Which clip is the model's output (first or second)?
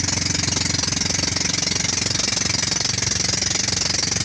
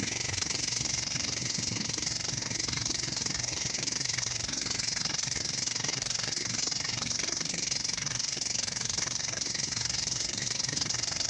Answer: second